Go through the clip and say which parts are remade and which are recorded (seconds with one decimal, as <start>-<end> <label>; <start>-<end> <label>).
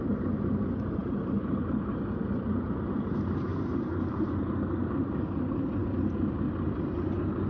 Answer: 0.0-1.0 recorded; 1.0-1.9 remade; 1.9-3.5 recorded; 3.5-4.3 remade; 4.3-5.8 recorded; 5.8-6.8 remade; 6.8-7.5 recorded